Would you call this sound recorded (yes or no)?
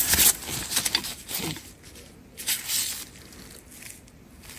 yes